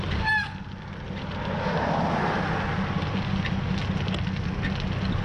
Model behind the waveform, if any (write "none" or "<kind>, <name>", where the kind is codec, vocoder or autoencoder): none